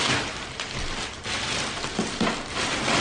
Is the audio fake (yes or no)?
no